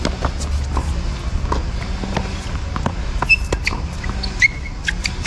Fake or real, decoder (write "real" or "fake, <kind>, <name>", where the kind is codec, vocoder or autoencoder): real